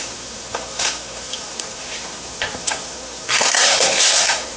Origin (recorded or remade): remade